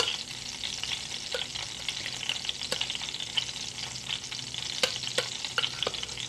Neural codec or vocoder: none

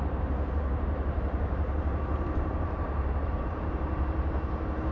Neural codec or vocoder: vocoder, BigVGAN v2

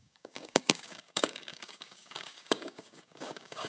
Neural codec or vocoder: codec, DAC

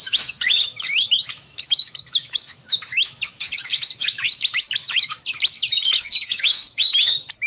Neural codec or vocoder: autoencoder, DAC-VAE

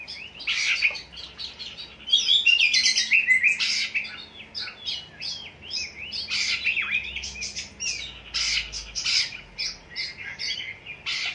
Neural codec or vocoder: none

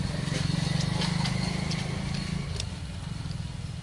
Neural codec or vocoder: none